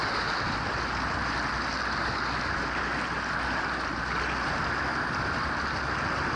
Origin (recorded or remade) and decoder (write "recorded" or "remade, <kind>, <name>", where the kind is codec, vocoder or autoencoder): recorded